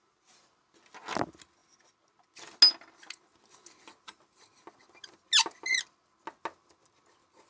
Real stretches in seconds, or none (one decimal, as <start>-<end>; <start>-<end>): 0.0-7.5